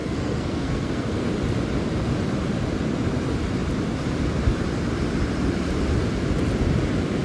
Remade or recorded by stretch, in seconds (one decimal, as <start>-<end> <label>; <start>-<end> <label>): 0.0-1.3 remade; 1.3-7.2 recorded